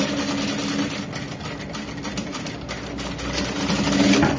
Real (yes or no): yes